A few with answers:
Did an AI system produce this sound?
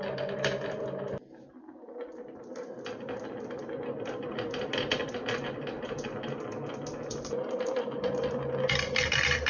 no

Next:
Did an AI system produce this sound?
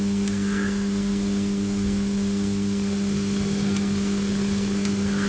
yes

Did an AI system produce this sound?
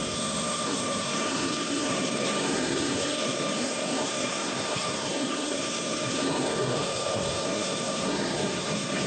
yes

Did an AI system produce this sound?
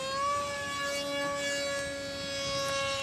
no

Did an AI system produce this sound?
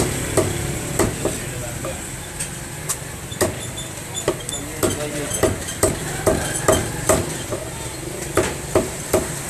no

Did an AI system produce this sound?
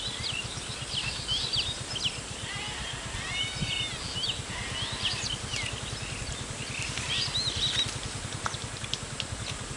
no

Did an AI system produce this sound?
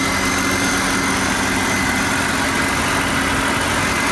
no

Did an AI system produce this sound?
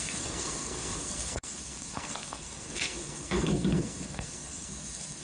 yes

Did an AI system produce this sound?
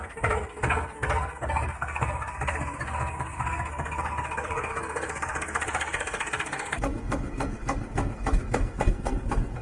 yes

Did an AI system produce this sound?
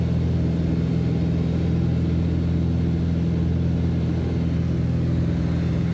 no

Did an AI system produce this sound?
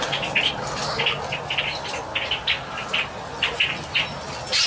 no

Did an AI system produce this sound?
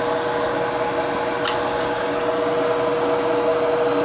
no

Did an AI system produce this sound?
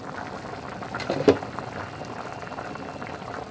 no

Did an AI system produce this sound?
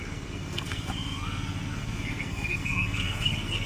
yes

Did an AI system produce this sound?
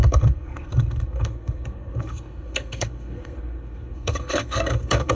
yes